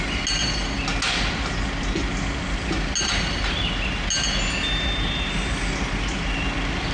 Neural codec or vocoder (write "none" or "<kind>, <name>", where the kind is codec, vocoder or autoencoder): none